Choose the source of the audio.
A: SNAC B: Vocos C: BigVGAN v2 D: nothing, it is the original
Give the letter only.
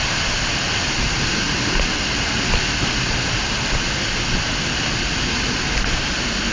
D